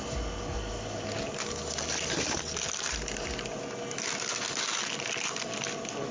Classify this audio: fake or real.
real